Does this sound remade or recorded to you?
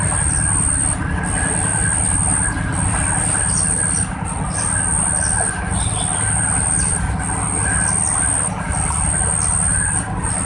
recorded